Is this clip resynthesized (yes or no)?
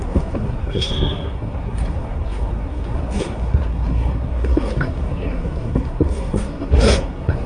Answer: yes